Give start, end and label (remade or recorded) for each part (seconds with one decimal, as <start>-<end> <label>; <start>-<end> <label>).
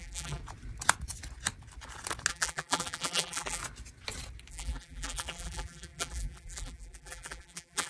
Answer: 0.0-0.4 remade; 0.4-2.3 recorded; 2.3-3.6 remade; 3.6-4.5 recorded; 4.5-7.9 remade